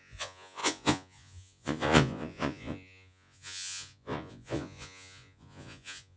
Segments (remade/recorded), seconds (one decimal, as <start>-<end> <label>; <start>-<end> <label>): 0.0-6.2 remade